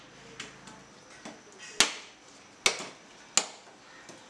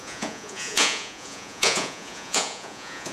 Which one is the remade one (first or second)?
second